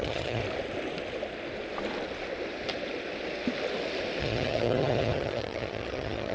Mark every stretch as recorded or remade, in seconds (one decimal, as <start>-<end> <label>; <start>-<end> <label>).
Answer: 0.0-0.4 remade; 0.4-4.2 recorded; 4.2-6.3 remade